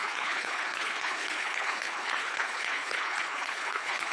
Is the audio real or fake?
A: fake